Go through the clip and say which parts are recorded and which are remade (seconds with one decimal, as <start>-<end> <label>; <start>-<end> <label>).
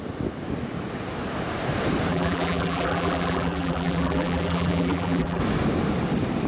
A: 0.0-2.1 recorded; 2.1-5.4 remade; 5.4-6.5 recorded